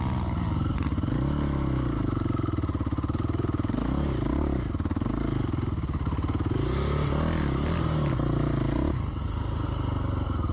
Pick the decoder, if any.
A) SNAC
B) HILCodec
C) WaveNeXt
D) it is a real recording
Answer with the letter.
D